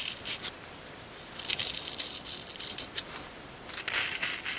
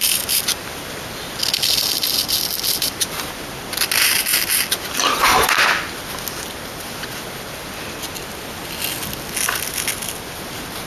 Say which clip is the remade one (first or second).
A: first